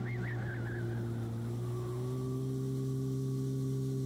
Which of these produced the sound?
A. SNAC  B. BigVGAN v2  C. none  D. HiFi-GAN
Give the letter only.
C